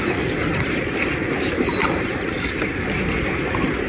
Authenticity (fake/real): real